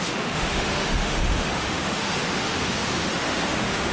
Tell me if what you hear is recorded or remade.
remade